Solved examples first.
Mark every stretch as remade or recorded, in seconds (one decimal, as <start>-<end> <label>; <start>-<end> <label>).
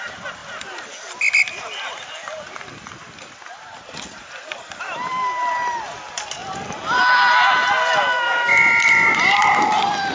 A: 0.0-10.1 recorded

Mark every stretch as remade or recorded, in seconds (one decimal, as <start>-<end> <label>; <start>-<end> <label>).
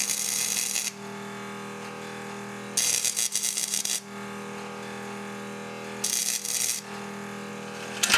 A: 0.0-8.2 recorded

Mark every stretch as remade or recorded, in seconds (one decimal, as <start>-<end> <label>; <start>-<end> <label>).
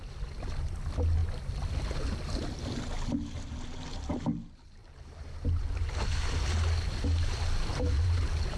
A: 0.0-4.8 recorded; 4.8-5.9 remade; 5.9-7.7 recorded; 7.7-8.2 remade; 8.2-8.6 recorded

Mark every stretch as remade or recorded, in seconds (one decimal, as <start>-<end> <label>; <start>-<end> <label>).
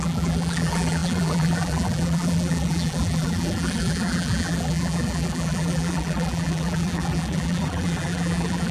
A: 0.0-8.7 remade